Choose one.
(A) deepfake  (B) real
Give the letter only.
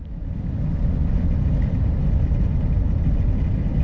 B